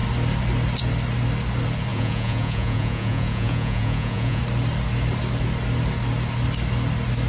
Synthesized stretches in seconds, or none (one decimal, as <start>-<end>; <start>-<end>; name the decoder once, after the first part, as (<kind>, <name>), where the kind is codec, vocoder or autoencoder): 1.9-4.4 (vocoder, Vocos)